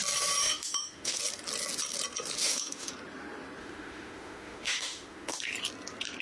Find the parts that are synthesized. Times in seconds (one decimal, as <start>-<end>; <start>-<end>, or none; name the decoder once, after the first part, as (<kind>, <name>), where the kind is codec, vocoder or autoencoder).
0.4-1.2 (autoencoder, DAC-VAE); 2.4-2.9; 3.6-5.4